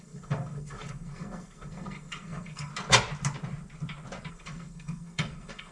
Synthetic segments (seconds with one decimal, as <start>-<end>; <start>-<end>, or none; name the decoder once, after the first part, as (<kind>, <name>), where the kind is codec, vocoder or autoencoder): 0.0-2.7 (codec, SNAC); 4.3-5.7